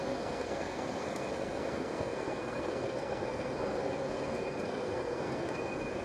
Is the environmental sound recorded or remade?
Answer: remade